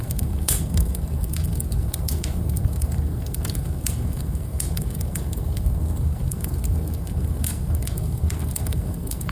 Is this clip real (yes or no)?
no